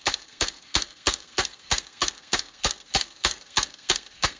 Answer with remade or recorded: remade